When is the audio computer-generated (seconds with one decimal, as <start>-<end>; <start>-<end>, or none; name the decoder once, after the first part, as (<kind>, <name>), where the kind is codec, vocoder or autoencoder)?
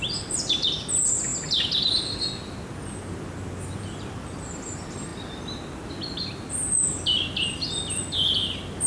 none